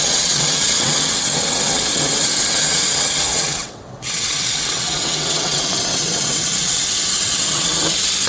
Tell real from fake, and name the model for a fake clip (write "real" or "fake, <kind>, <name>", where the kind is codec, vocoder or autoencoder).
fake, vocoder, WaveNeXt